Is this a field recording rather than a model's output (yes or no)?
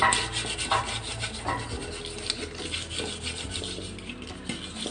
yes